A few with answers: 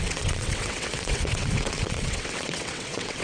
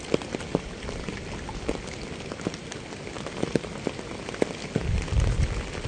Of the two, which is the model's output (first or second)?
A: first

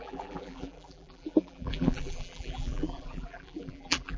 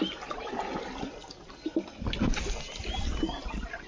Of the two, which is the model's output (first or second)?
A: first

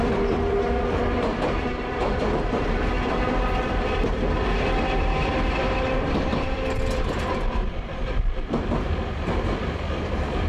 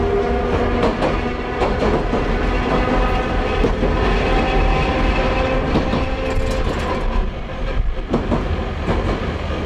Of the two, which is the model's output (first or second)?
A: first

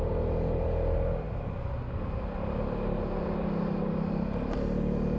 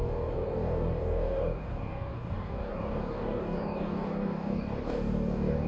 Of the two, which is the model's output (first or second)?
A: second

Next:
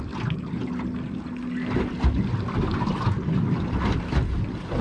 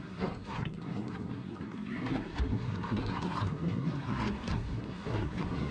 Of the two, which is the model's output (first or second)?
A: second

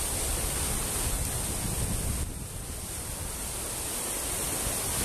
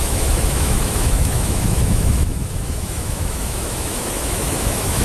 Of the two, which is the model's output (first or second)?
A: second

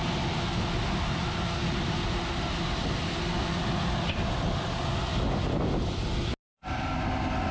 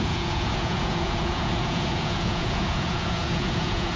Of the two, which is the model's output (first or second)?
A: second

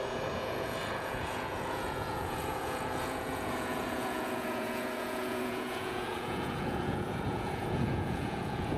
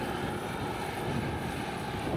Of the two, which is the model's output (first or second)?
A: first